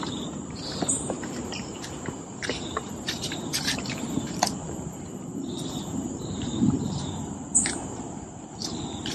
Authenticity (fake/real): fake